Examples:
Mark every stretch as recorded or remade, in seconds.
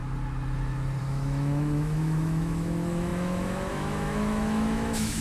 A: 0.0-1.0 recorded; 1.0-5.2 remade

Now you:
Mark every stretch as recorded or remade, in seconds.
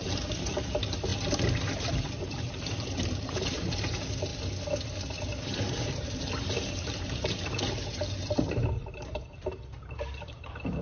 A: 0.0-1.1 remade; 1.1-1.9 recorded; 1.9-4.3 remade; 4.3-5.4 recorded; 5.4-10.8 remade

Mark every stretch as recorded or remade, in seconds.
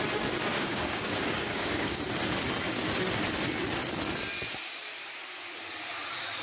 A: 0.0-0.5 recorded; 0.5-2.0 remade; 2.0-6.4 recorded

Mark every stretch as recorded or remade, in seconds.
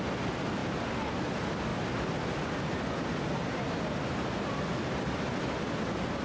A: 0.0-6.2 recorded